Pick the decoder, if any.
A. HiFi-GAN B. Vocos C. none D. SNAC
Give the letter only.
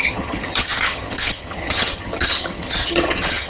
A